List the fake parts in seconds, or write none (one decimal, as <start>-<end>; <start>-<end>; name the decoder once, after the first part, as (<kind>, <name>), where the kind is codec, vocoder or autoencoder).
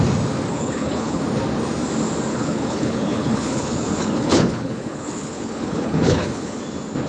0.5-1.2 (codec, HILCodec); 2.3-6.6